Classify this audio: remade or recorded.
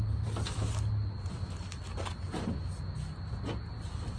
recorded